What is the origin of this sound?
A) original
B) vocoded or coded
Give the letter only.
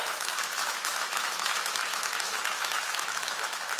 B